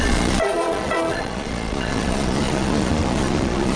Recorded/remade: remade